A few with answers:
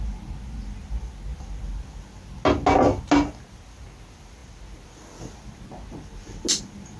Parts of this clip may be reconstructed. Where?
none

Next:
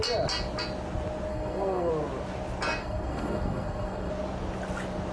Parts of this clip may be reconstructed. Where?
1.3-1.9 (codec, SNAC); 2.8-4.1

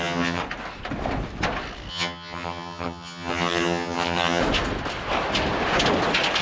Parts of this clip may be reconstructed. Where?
0.0-0.4 (vocoder, HiFi-GAN); 1.9-4.4

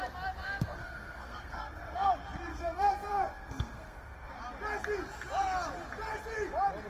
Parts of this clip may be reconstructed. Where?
0.4-2.1 (codec, SNAC); 2.5-4.3